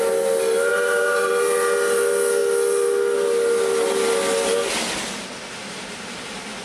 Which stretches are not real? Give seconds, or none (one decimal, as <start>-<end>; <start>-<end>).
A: 0.7-1.3